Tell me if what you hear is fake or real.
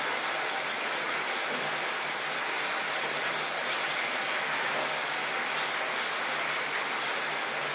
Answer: real